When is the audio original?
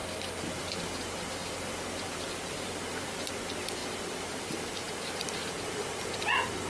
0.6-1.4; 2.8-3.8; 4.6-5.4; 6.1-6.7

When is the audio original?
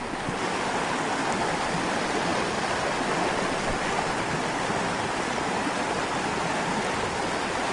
0.0-7.7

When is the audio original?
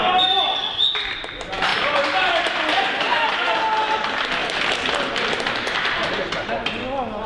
0.0-1.7; 3.6-4.4; 6.1-7.3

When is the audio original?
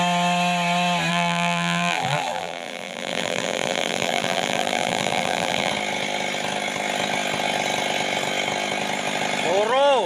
0.0-1.1; 5.7-10.1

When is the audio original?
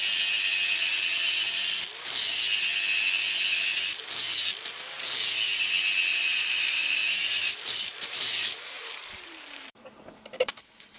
0.0-6.1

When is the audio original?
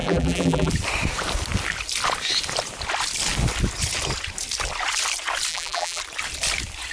0.7-5.5; 6.0-6.9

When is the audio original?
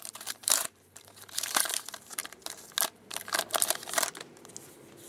2.2-5.1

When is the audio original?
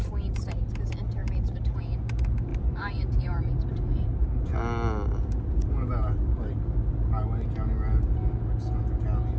0.0-1.2; 1.8-2.5; 4.2-9.4